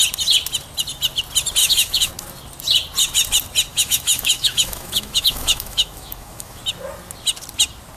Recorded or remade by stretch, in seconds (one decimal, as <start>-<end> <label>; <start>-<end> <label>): 0.0-1.6 recorded; 1.6-2.1 remade; 2.1-3.7 recorded; 3.7-6.6 remade; 6.6-8.0 recorded